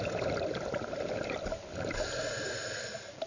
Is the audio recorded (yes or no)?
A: yes